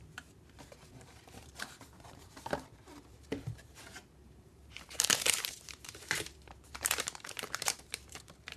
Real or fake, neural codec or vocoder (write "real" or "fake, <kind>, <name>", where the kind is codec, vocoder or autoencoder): fake, vocoder, BigVGAN v2